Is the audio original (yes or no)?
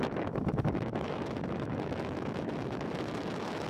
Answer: no